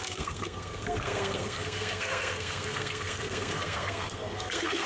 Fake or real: fake